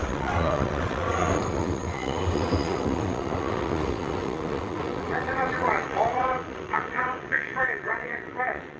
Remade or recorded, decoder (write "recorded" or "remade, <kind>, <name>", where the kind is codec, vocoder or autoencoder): remade, vocoder, WaveNeXt